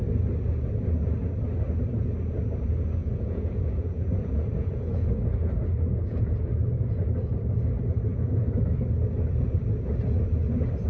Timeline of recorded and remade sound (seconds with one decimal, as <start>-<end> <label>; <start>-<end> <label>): 0.0-3.0 recorded; 3.0-6.4 remade; 6.4-8.1 recorded; 8.1-8.6 remade; 8.6-10.9 recorded